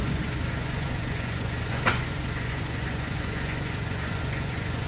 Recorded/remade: remade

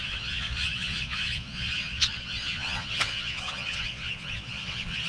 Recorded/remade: remade